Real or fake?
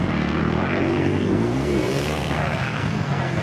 fake